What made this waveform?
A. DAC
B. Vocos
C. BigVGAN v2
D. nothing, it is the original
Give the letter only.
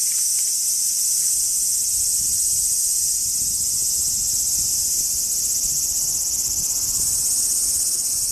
D